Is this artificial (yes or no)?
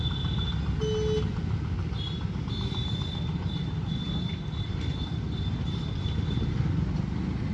no